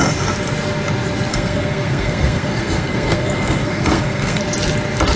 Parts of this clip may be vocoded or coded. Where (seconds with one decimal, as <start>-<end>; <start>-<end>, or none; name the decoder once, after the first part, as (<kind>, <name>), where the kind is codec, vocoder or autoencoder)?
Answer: 1.3-4.4 (codec, SNAC)